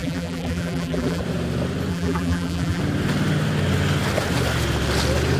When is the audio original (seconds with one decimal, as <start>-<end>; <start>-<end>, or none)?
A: 1.2-1.9; 2.8-5.4